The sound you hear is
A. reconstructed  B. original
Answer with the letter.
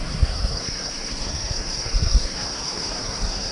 A